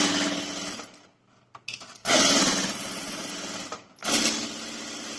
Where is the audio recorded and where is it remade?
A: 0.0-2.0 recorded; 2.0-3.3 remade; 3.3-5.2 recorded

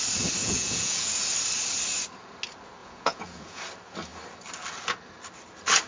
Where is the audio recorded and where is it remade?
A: 0.0-0.4 recorded; 0.4-1.2 remade; 1.2-2.8 recorded; 2.8-3.6 remade; 3.6-5.9 recorded

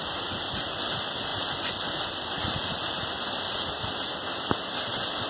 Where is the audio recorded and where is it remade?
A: 0.0-5.3 recorded

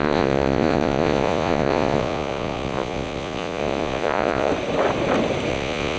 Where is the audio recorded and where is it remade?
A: 0.0-4.5 remade; 4.5-5.5 recorded; 5.5-6.0 remade

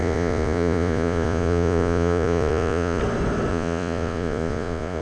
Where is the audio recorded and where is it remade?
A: 0.0-3.0 remade; 3.0-3.5 recorded; 3.5-5.0 remade

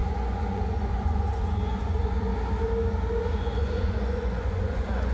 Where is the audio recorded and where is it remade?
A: 0.0-2.3 remade; 2.3-3.4 recorded; 3.4-5.1 remade

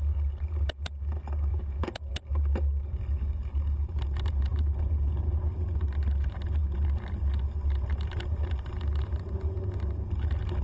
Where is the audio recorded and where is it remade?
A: 0.0-1.5 recorded; 1.5-2.1 remade; 2.1-10.6 recorded